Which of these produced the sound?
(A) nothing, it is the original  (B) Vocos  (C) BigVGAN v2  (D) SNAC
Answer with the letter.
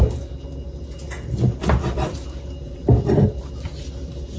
A